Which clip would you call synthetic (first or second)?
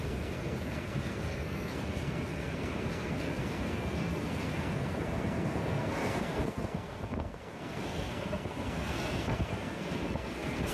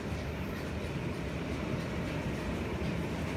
first